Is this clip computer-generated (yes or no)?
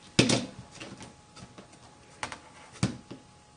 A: no